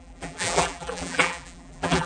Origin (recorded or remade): remade